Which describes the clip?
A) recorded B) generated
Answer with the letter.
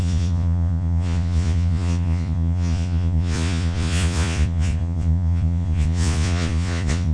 B